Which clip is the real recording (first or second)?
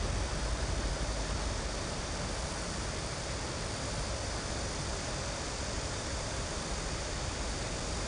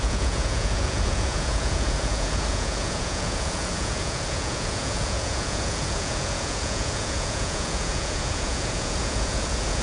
first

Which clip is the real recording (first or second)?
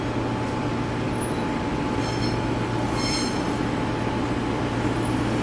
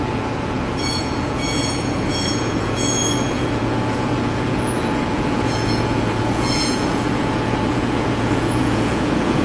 first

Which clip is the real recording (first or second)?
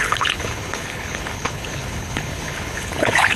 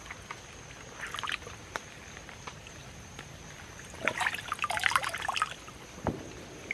second